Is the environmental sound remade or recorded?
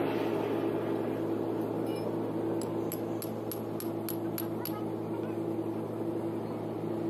recorded